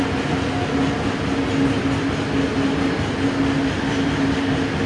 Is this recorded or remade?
recorded